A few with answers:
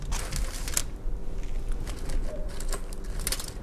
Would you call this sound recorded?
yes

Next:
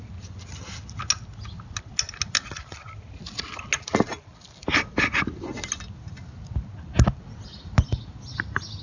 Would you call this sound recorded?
yes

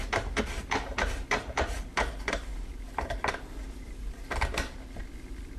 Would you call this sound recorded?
no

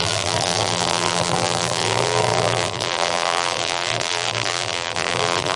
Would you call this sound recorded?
no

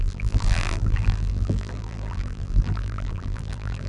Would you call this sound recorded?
no